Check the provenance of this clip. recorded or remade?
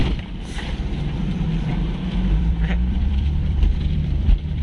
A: remade